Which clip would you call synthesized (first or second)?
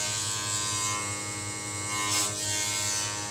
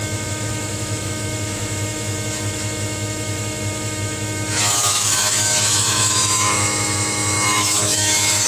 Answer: second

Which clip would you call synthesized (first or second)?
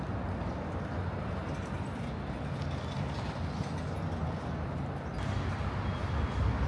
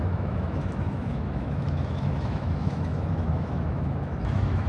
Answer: second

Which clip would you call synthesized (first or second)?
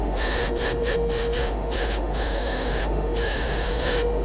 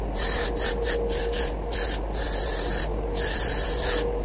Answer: first